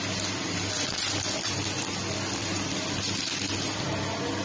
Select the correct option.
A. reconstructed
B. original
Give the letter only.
B